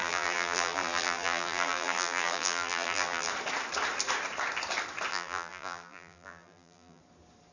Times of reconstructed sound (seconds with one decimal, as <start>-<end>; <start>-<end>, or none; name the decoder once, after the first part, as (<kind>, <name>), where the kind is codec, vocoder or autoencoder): 0.0-3.3 (vocoder, BigVGAN v2); 5.1-7.0